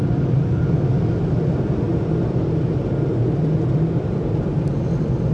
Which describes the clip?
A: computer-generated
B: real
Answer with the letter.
B